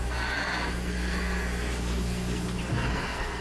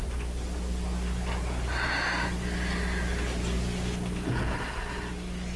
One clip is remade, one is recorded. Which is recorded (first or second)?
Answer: second